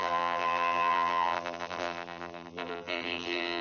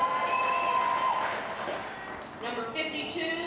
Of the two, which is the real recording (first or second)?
second